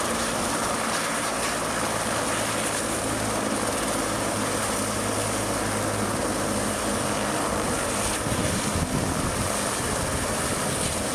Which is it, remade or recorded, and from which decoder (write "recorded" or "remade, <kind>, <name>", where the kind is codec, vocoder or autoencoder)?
recorded